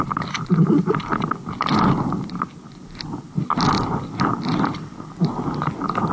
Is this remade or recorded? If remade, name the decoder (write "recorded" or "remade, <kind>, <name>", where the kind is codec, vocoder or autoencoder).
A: recorded